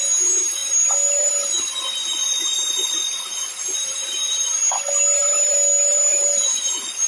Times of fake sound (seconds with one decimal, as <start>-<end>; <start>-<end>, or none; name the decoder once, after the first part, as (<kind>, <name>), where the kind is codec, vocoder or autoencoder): 2.0-4.6 (vocoder, BigVGAN v2); 6.1-7.1